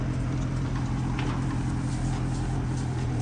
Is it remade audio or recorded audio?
recorded